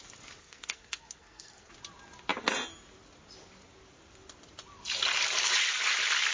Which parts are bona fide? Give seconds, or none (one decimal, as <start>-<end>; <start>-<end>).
0.0-0.4; 1.7-6.3

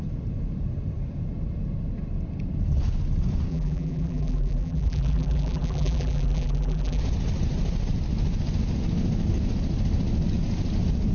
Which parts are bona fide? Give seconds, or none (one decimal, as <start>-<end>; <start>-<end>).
0.0-3.5; 7.0-11.1